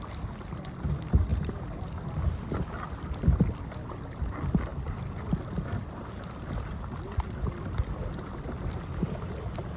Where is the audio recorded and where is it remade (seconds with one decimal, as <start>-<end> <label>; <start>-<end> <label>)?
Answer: 0.0-1.3 recorded; 1.3-2.1 remade; 2.1-4.7 recorded; 4.7-5.3 remade; 5.3-9.8 recorded